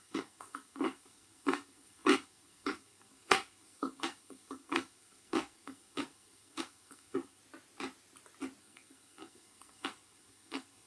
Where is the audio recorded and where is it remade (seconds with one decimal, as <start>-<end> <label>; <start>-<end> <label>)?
0.0-7.4 remade; 7.4-8.6 recorded; 8.6-10.9 remade

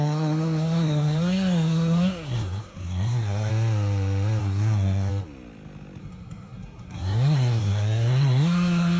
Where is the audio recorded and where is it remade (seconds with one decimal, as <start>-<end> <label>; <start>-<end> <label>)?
0.0-3.5 remade; 3.5-4.4 recorded; 4.4-5.1 remade; 5.1-6.0 recorded; 6.0-9.0 remade

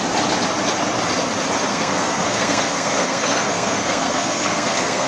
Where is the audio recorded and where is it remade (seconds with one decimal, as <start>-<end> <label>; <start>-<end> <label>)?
0.0-1.7 recorded; 1.7-5.1 remade

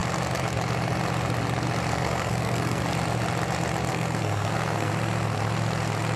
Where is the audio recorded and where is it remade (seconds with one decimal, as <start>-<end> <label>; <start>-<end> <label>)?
0.0-1.9 recorded; 1.9-2.8 remade; 2.8-3.9 recorded; 3.9-4.9 remade; 4.9-6.2 recorded

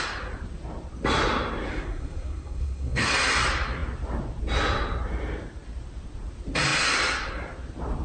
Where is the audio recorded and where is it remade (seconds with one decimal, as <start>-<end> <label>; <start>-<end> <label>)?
0.0-1.7 recorded; 1.7-3.1 remade; 3.1-8.0 recorded

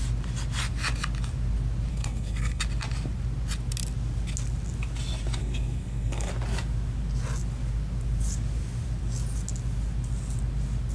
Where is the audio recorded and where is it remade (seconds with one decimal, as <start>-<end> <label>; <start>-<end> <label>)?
0.0-1.9 recorded; 1.9-2.6 remade; 2.6-5.4 recorded; 5.4-6.3 remade; 6.3-10.9 recorded

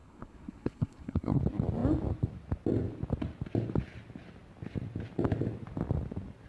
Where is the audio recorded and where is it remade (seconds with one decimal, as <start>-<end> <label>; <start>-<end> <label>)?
0.0-1.4 remade; 1.4-6.5 recorded